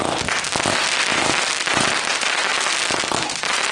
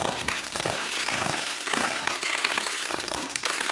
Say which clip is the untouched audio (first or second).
first